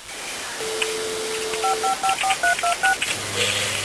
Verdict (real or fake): real